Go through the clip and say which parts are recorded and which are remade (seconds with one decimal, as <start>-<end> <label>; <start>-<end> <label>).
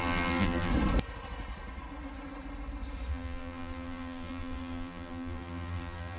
0.0-0.7 remade; 0.7-3.1 recorded; 3.1-6.2 remade